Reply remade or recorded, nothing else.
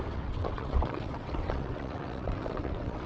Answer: remade